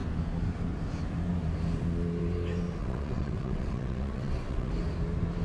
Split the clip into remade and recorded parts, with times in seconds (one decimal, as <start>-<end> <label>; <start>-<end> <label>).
0.0-2.8 recorded; 2.8-4.7 remade; 4.7-5.4 recorded